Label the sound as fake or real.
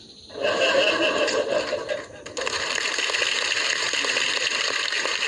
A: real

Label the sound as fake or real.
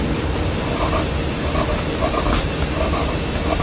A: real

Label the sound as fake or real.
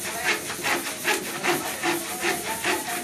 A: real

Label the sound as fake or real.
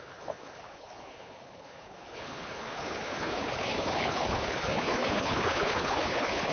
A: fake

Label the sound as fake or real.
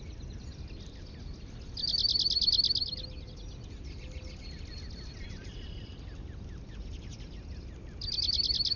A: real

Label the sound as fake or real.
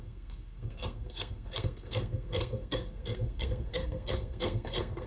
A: fake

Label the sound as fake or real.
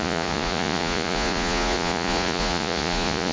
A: fake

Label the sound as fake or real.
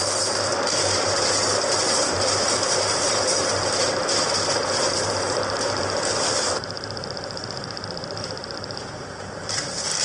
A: fake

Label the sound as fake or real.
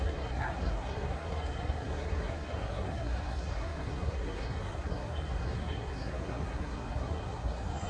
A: fake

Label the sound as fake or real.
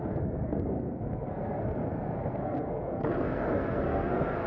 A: fake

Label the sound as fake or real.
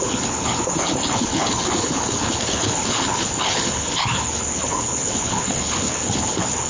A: fake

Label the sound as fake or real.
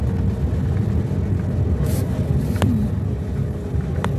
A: real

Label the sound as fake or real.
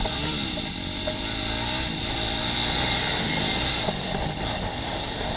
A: real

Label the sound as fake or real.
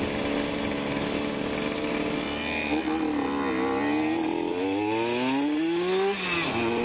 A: real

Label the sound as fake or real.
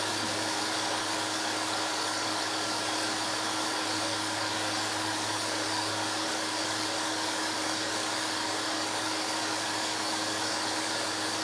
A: fake